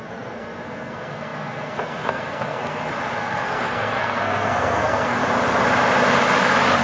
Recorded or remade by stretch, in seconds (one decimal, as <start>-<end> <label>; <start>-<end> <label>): 0.0-5.2 remade; 5.2-6.8 recorded